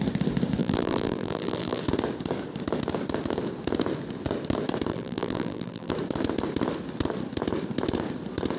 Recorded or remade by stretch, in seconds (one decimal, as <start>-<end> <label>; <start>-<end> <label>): 0.0-0.6 recorded; 0.6-1.8 remade; 1.8-4.9 recorded; 4.9-5.9 remade; 5.9-8.6 recorded